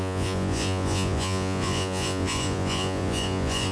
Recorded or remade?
remade